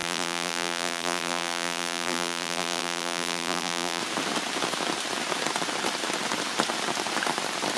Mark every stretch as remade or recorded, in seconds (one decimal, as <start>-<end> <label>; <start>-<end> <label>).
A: 0.0-4.0 remade; 4.0-7.8 recorded

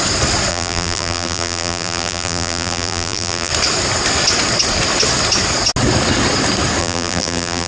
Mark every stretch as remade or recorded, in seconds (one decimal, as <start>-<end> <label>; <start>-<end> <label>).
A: 0.0-0.5 recorded; 0.5-3.5 remade; 3.5-6.8 recorded; 6.8-7.7 remade

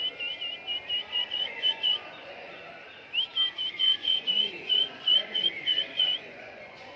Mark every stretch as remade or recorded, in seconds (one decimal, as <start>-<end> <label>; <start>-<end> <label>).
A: 0.0-1.1 recorded; 1.1-2.6 remade; 2.6-3.8 recorded; 3.8-7.0 remade